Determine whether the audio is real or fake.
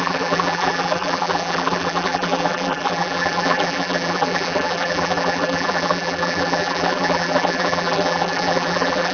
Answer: fake